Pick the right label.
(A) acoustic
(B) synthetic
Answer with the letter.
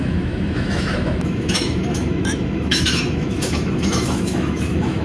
B